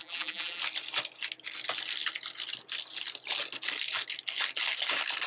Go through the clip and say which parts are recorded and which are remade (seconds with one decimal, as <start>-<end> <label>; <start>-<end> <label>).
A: 0.0-0.6 remade; 0.6-5.3 recorded